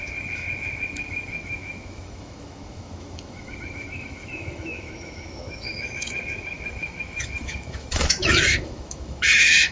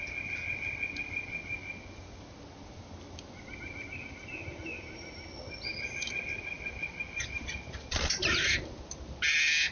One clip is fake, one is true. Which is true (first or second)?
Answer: second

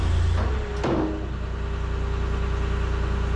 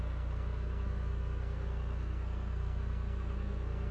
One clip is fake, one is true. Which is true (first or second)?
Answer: first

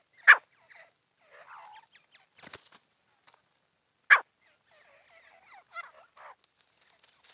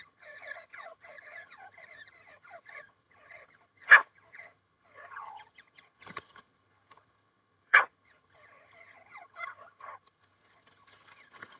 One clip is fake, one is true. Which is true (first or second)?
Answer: first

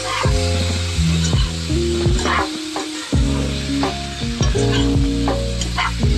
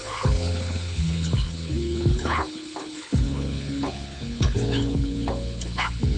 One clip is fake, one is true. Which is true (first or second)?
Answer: first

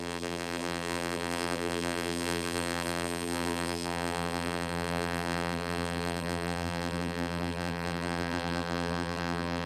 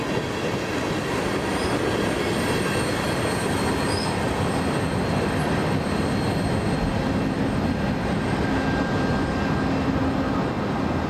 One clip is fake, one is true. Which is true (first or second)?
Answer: second